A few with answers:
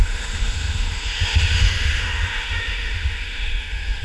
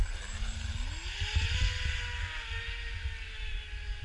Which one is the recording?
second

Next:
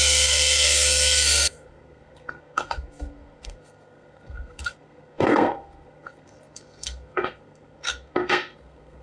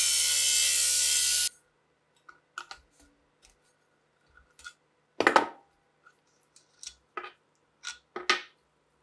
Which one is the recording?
second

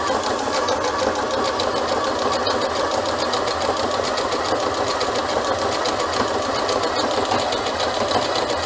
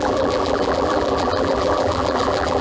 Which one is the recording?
first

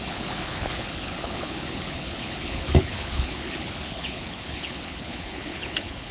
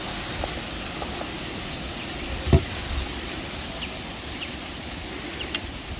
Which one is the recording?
second